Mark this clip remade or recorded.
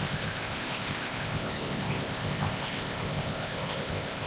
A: remade